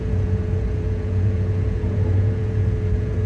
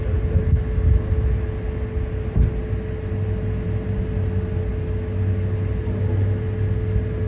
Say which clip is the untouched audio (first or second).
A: second